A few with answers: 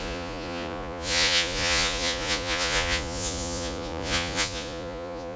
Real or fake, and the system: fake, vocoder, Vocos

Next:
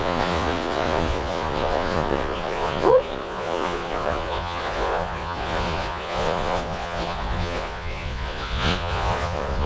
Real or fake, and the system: fake, vocoder, Vocos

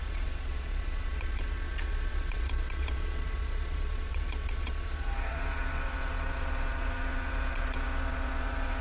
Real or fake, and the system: fake, vocoder, Vocos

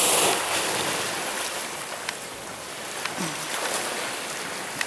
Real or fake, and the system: real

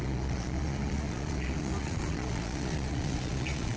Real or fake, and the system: fake, vocoder, Vocos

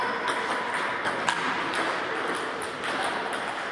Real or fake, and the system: real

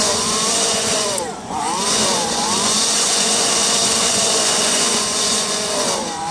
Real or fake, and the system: fake, vocoder, Vocos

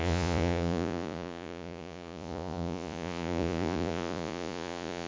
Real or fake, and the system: fake, vocoder, Vocos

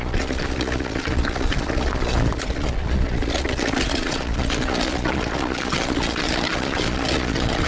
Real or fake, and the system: fake, vocoder, Vocos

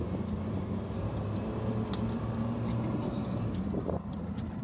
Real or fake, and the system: real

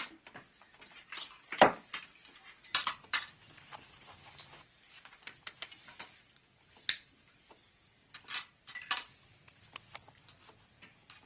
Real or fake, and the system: real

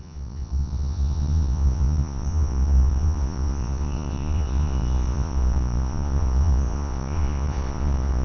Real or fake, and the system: fake, vocoder, Vocos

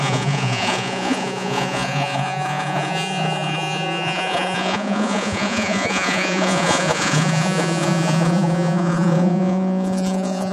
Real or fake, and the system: fake, vocoder, Vocos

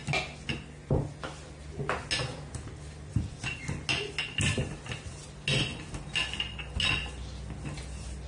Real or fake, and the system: real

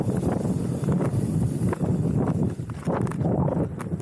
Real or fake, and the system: real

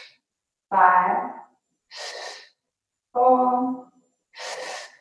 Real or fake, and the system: real